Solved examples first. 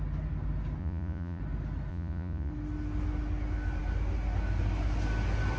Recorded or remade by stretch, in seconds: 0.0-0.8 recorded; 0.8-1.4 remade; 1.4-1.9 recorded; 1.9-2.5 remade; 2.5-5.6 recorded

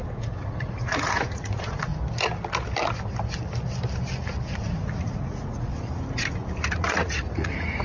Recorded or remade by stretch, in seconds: 0.0-1.9 remade; 1.9-4.5 recorded; 4.5-5.7 remade; 5.7-6.7 recorded; 6.7-7.8 remade